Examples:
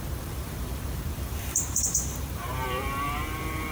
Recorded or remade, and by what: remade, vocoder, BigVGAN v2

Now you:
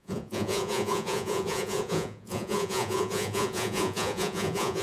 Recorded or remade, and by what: remade, vocoder, Vocos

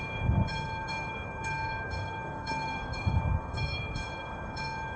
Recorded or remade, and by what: remade, codec, DAC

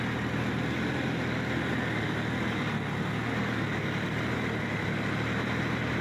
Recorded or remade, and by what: recorded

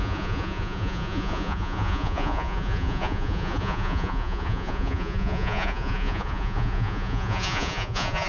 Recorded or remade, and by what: remade, vocoder, Vocos